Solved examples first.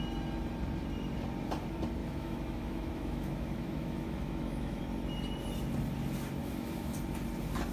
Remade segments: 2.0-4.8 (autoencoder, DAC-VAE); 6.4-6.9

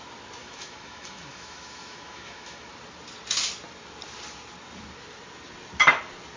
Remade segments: 0.4-2.7 (autoencoder, DAC-VAE)

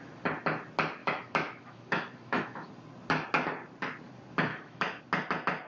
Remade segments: 1.0-2.7 (autoencoder, DAC-VAE); 4.5-5.0

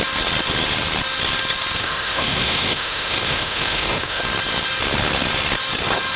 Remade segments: 1.8-4.2 (autoencoder, DAC-VAE)

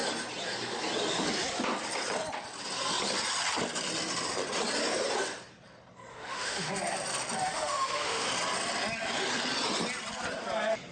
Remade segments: 6.1-6.7 (autoencoder, DAC-VAE); 7.4-8.3